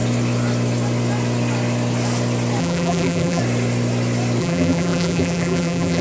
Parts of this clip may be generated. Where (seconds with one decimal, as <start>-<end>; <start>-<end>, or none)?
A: 2.6-3.4; 4.4-6.0